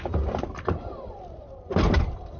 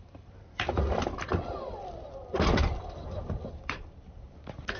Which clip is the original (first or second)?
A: second